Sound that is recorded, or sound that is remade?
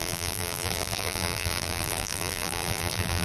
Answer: remade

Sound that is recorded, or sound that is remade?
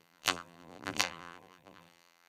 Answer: remade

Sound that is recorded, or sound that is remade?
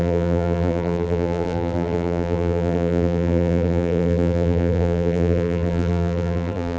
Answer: remade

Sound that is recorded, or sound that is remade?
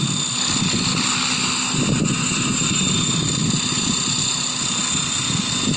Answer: recorded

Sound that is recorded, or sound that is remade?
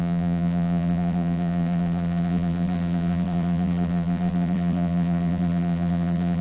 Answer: remade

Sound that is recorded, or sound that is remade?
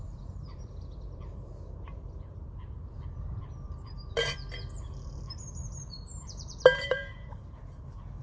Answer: remade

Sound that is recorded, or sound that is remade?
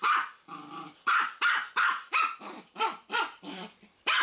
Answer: remade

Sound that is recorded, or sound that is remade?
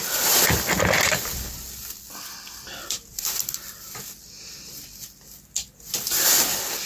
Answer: recorded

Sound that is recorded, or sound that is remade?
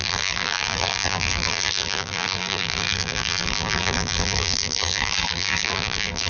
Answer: remade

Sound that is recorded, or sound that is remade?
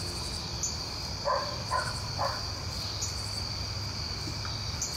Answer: recorded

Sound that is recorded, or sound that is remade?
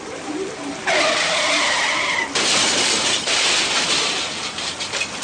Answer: remade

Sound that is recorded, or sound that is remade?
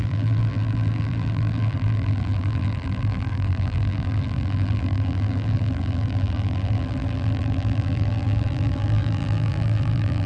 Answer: remade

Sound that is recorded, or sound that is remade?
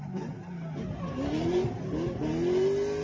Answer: recorded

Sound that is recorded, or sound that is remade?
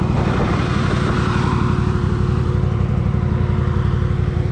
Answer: remade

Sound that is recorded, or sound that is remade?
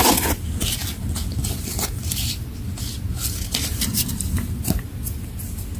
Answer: recorded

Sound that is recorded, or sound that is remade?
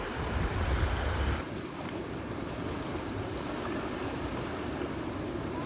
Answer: remade